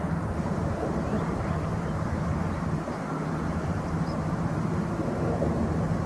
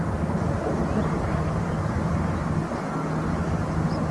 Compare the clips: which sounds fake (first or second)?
first